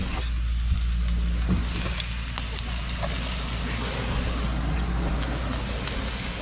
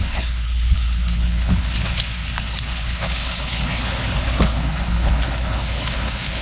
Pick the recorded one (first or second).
first